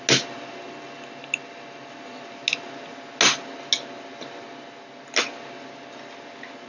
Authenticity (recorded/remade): recorded